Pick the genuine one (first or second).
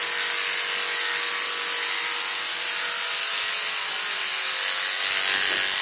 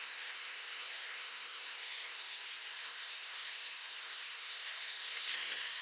first